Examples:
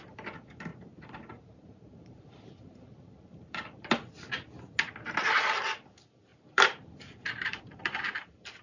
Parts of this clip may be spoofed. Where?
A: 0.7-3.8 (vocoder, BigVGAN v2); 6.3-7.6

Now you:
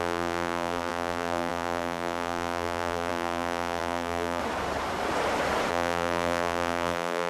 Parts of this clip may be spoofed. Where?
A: 0.0-4.4 (vocoder, BigVGAN v2); 5.7-7.3